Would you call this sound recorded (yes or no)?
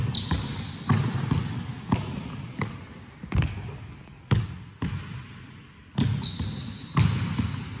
yes